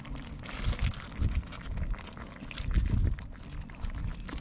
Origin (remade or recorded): recorded